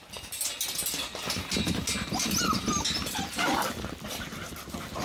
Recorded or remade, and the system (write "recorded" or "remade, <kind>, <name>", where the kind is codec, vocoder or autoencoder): recorded